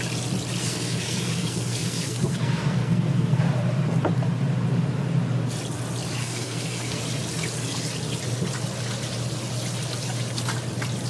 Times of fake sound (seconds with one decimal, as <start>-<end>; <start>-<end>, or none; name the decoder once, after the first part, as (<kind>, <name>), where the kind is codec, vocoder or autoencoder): 0.6-3.4 (codec, SNAC); 6.2-7.0